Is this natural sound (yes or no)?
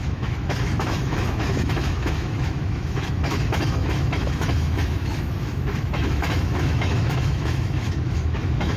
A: no